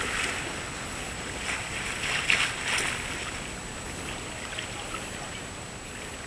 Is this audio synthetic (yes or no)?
no